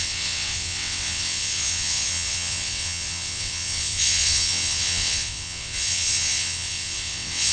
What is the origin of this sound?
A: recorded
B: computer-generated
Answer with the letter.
B